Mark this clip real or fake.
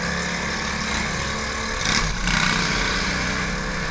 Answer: real